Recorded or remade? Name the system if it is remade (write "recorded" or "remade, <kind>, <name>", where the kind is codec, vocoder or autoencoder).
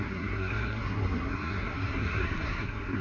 remade, codec, SNAC